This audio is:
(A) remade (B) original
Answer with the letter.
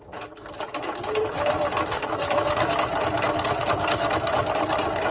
B